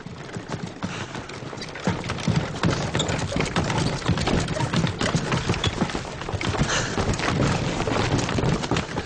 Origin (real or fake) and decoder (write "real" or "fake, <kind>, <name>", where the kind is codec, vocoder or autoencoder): real